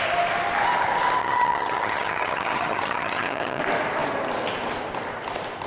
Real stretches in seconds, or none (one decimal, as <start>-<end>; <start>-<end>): 0.0-1.2; 3.6-5.7

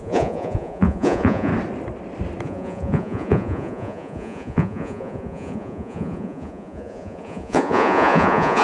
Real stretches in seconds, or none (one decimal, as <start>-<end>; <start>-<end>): 1.5-2.4